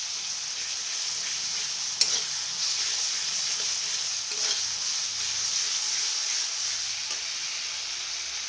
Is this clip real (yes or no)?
yes